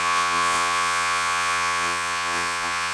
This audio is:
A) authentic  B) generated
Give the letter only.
B